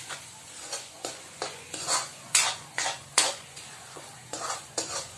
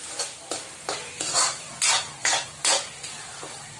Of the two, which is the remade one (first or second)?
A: first